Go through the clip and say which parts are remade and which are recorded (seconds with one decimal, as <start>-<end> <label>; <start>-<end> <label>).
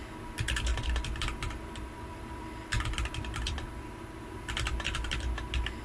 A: 0.0-0.7 recorded; 0.7-4.2 remade; 4.2-5.8 recorded